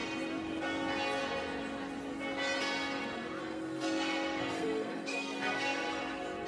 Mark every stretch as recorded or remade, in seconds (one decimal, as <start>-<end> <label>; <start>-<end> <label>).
0.0-3.4 recorded; 3.4-6.0 remade; 6.0-6.5 recorded